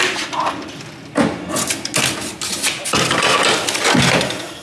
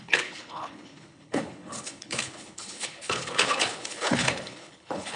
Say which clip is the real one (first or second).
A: first